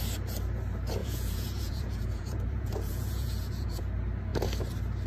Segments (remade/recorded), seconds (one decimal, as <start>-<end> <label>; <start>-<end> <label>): 0.0-1.0 recorded; 1.0-3.8 remade; 3.8-5.1 recorded